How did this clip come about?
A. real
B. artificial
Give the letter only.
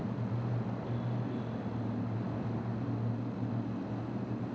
A